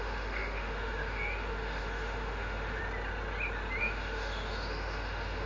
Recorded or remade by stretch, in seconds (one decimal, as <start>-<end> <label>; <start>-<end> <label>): 0.0-2.8 remade; 2.8-3.8 recorded; 3.8-5.5 remade